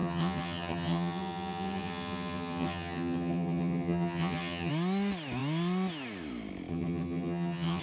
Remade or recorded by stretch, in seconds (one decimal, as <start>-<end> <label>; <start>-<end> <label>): 0.0-4.7 remade; 4.7-6.7 recorded; 6.7-7.8 remade